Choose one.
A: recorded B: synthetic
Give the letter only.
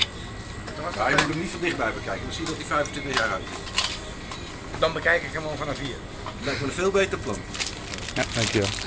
A